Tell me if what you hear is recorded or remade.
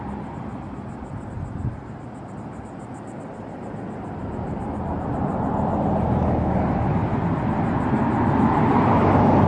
recorded